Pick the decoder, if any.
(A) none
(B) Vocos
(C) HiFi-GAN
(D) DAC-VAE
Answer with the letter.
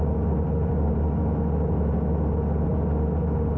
A